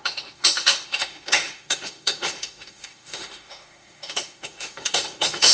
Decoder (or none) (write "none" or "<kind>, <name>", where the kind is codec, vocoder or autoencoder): autoencoder, DAC-VAE